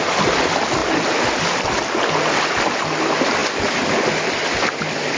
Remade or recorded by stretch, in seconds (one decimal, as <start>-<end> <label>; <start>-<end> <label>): 0.0-3.4 recorded; 3.4-5.2 remade